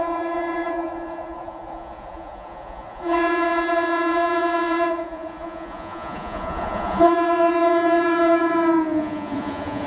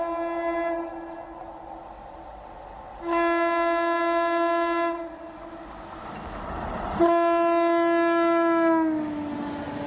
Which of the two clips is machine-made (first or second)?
first